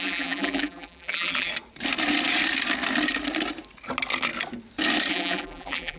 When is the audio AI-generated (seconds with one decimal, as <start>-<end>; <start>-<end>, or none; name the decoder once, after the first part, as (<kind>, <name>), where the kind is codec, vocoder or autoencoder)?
0.0-1.5 (vocoder, BigVGAN v2); 5.1-6.0